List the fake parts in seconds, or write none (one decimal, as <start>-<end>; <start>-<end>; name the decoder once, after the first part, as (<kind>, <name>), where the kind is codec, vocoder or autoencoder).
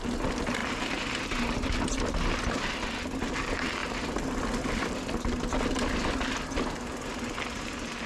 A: 3.8-5.0 (vocoder, BigVGAN v2)